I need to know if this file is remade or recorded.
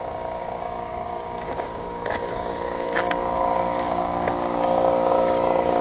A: remade